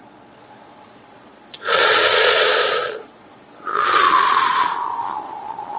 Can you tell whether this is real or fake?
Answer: fake